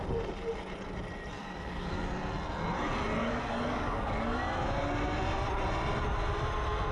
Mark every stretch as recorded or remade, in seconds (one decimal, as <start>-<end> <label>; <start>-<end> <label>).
0.0-1.4 recorded; 1.4-2.1 remade; 2.1-3.2 recorded; 3.2-4.4 remade; 4.4-6.9 recorded